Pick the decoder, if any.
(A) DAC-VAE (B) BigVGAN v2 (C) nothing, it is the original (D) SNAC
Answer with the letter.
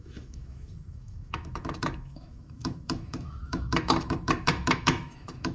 A